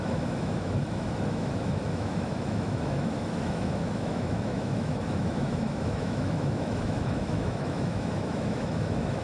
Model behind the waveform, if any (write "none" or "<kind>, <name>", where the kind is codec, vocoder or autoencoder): autoencoder, DAC-VAE